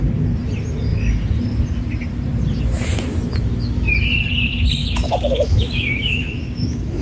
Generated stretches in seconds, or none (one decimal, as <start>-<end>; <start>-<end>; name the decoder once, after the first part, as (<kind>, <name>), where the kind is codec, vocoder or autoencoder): 3.1-3.9 (autoencoder, DAC-VAE); 4.8-7.0